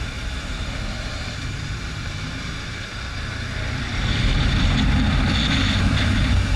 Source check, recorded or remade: remade